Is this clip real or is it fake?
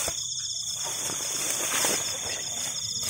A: real